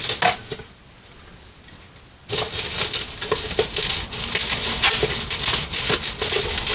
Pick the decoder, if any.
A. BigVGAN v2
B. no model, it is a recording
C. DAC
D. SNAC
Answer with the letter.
B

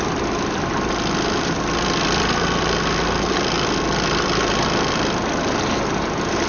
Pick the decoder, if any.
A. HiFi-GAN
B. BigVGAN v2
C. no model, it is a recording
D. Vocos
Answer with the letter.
C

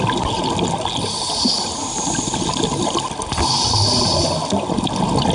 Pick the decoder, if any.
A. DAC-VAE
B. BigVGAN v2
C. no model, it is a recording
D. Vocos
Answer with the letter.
C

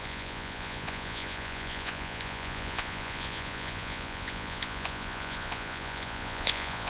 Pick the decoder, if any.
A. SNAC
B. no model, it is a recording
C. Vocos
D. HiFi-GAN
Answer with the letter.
C